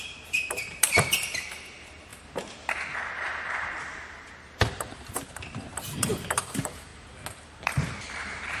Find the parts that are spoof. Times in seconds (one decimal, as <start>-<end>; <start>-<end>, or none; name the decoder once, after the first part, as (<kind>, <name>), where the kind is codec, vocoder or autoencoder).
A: 0.0-6.9 (vocoder, BigVGAN v2); 7.5-8.6